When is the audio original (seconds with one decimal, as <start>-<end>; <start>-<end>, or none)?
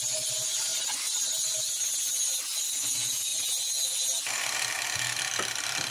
0.0-5.9